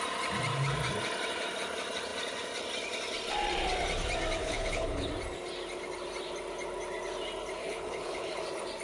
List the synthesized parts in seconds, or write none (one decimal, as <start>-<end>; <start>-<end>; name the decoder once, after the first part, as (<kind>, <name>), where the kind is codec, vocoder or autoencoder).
4.4-5.1 (codec, HILCodec); 7.6-8.4